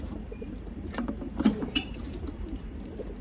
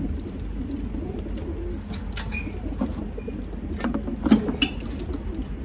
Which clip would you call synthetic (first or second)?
first